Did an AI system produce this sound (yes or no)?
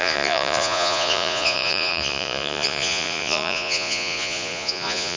yes